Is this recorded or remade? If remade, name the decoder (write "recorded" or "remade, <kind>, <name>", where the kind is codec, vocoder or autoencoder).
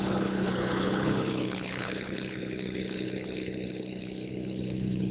remade, codec, HILCodec